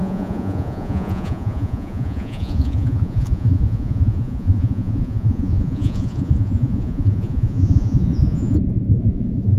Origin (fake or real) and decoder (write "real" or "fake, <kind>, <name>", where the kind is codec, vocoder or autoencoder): fake, vocoder, Vocos